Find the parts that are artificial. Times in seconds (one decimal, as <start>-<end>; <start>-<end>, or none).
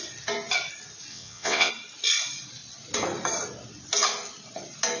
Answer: 1.1-1.7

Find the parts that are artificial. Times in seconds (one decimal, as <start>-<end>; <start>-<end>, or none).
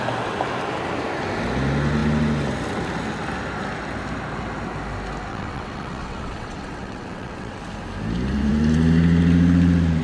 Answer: 5.3-7.6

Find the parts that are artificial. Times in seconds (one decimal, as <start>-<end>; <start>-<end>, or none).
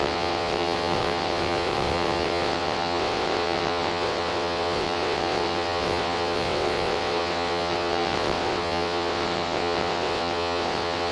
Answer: 0.0-11.1